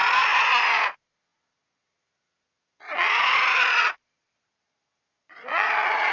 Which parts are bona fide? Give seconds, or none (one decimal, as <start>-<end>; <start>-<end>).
none